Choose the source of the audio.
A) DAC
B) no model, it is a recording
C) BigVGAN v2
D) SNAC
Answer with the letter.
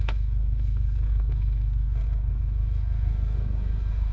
D